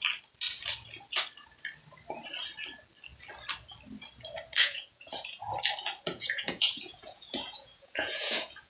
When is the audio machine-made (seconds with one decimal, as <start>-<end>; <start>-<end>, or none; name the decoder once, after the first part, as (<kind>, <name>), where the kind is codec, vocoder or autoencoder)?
4.6-5.5 (vocoder, Vocos); 6.1-8.7